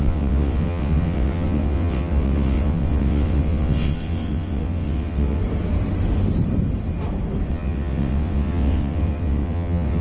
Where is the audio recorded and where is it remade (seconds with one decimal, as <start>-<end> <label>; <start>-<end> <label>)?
0.0-5.4 remade; 5.4-7.5 recorded; 7.5-10.0 remade